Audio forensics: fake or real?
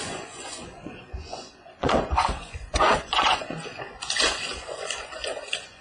fake